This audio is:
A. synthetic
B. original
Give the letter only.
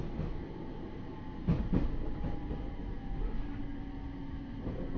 B